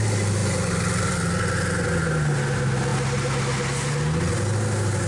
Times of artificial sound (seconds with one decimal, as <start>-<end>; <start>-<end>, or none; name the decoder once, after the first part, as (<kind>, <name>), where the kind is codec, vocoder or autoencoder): none